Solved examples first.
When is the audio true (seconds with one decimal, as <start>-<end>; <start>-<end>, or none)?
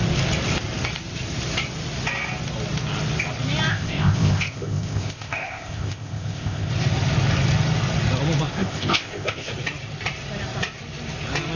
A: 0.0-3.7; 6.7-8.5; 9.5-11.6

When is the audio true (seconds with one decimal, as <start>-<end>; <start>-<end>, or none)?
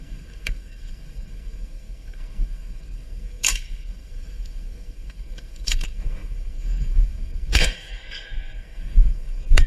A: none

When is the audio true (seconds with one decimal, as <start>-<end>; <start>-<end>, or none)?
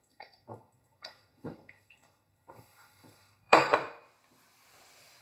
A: 3.7-5.2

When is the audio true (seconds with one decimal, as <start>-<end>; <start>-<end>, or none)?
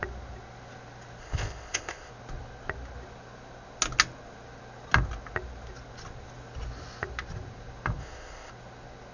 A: 0.0-1.2; 2.1-8.0; 8.5-9.1